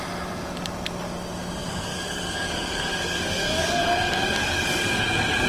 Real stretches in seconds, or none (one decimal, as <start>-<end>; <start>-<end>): 0.0-1.6; 4.9-5.5